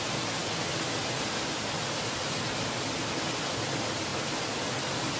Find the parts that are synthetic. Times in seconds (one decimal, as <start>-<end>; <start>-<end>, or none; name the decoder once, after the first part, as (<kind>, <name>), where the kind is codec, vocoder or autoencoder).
none